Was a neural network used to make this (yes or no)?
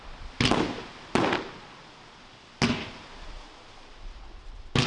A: no